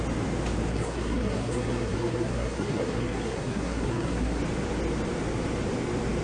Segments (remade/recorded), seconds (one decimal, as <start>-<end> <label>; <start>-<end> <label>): 0.0-0.7 recorded; 0.7-4.4 remade; 4.4-6.2 recorded